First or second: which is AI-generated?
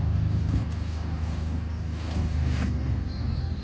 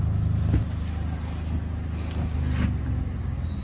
first